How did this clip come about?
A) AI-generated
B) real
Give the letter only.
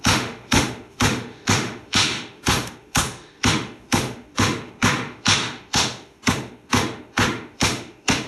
A